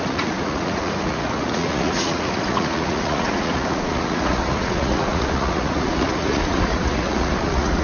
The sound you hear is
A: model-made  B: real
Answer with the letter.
A